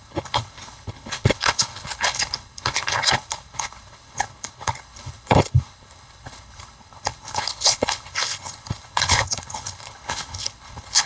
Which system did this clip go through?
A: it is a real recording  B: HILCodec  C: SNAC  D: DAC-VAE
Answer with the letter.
B